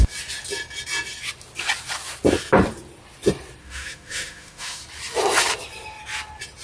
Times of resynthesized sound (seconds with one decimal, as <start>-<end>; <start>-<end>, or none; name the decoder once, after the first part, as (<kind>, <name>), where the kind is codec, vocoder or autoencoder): 3.6-4.8 (autoencoder, DAC-VAE)